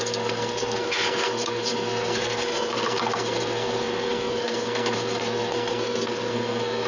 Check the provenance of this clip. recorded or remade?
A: remade